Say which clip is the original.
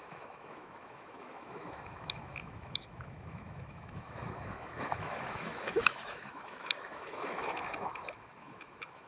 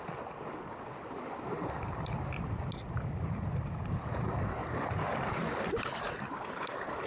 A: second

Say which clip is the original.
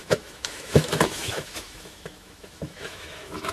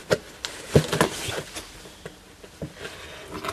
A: second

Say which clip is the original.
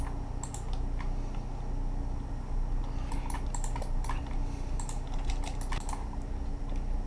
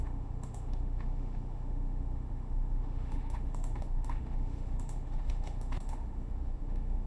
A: first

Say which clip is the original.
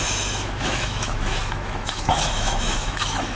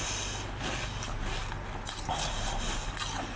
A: second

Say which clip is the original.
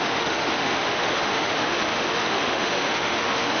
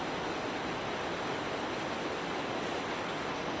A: second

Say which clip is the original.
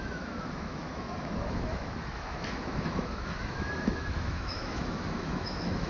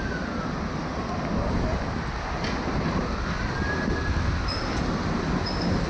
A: second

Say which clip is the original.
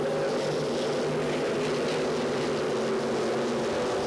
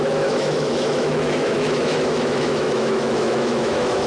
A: first